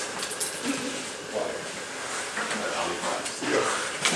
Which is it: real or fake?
real